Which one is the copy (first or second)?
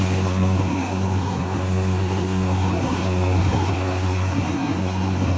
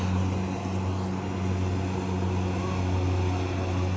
first